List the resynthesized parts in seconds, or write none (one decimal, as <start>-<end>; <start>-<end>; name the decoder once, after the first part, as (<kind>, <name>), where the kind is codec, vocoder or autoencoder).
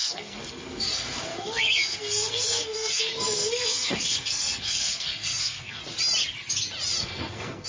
0.0-5.8 (codec, SNAC); 7.0-7.7